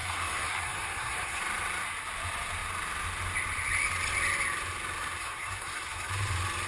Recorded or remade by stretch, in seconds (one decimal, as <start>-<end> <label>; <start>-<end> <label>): 0.0-1.4 remade; 1.4-5.2 recorded; 5.2-6.1 remade; 6.1-6.7 recorded